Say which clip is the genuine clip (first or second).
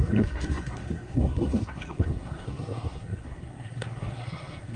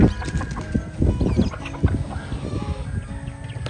second